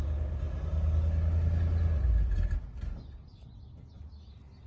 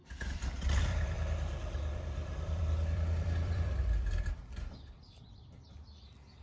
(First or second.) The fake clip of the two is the second